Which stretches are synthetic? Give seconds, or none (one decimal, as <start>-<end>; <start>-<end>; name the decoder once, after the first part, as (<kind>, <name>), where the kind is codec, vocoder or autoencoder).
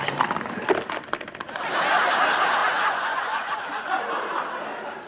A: 2.6-4.0 (vocoder, Vocos)